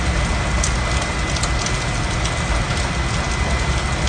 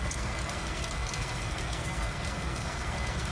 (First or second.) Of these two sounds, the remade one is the second